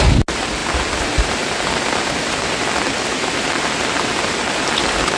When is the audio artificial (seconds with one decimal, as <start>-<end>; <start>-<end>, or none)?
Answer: none